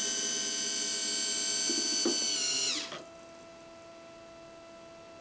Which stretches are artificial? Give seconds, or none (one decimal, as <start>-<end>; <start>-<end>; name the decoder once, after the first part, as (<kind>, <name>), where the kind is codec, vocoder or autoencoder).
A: none

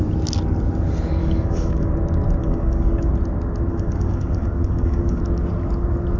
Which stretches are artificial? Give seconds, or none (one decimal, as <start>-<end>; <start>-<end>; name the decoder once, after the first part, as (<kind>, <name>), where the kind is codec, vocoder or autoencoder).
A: 1.2-1.9 (codec, DAC); 2.4-3.1; 3.7-5.2